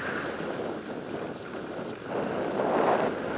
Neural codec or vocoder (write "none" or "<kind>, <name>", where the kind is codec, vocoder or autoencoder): none